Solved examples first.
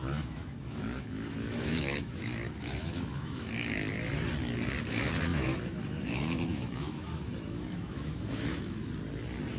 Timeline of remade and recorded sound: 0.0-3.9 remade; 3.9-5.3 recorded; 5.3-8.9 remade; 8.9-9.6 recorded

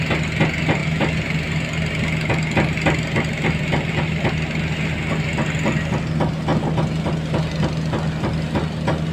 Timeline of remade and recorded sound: 0.0-9.1 recorded